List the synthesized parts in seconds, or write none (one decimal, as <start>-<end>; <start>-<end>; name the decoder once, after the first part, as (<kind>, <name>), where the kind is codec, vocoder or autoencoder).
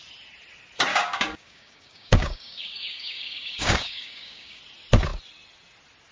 0.9-4.6 (codec, DAC)